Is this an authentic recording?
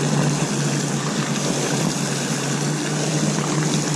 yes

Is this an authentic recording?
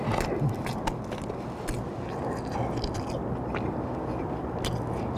yes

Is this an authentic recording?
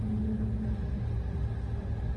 yes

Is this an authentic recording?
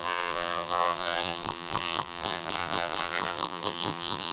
no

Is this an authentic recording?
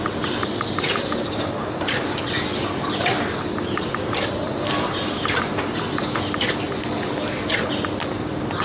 no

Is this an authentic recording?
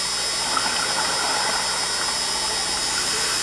yes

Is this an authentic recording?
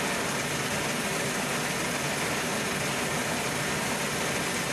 yes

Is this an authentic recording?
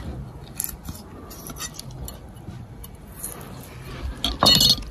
yes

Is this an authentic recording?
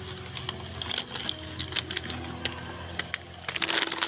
yes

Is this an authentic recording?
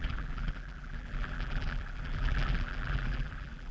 no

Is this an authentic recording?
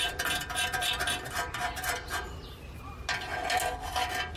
yes